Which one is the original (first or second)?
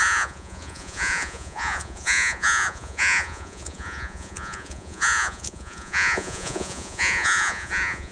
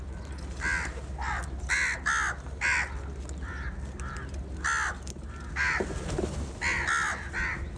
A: second